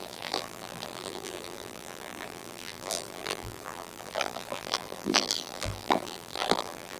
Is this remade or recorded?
remade